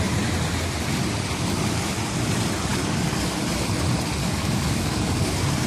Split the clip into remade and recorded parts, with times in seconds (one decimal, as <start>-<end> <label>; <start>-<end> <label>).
0.0-2.7 recorded; 2.7-3.3 remade; 3.3-4.2 recorded; 4.2-5.3 remade; 5.3-5.7 recorded